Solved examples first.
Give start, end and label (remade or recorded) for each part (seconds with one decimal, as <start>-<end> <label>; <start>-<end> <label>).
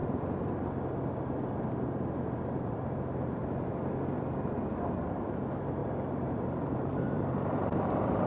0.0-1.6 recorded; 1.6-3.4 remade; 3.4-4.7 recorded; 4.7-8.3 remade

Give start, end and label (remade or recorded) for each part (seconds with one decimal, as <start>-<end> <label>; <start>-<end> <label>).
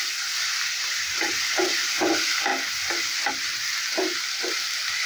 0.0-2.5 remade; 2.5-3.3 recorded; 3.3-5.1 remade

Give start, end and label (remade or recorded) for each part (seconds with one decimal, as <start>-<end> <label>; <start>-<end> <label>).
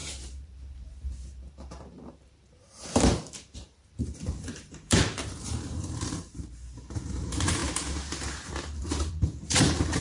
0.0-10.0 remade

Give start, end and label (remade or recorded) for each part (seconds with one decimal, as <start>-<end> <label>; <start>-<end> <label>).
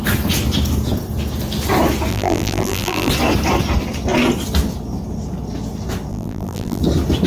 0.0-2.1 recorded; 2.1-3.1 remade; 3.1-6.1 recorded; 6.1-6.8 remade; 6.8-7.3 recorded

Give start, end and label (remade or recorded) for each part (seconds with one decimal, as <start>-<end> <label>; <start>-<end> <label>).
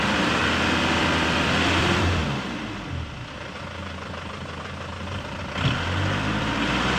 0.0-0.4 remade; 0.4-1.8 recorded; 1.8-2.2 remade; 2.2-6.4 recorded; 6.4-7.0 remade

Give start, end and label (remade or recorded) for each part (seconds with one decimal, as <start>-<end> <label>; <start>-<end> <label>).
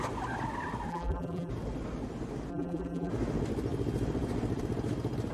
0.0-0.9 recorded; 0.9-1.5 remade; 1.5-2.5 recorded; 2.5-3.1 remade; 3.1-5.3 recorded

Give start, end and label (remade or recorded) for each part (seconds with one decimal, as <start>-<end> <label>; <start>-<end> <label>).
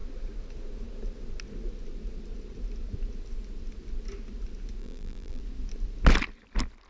0.0-4.8 recorded; 4.8-5.4 remade; 5.4-6.9 recorded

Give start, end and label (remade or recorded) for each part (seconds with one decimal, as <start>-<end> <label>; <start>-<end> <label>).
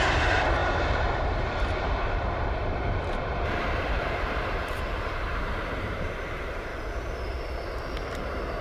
0.0-6.7 remade; 6.7-8.6 recorded